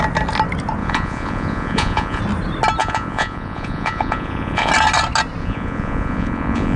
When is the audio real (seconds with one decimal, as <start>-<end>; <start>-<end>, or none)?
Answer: 0.0-0.8; 2.2-2.8; 4.7-5.4